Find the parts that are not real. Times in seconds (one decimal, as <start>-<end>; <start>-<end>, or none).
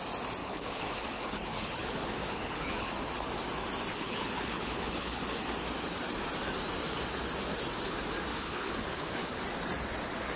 0.4-2.9; 3.9-5.2; 8.3-9.4